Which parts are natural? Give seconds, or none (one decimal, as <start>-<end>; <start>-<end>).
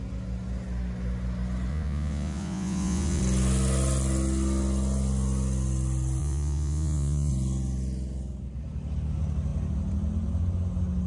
0.0-1.7; 3.2-6.2; 7.3-11.1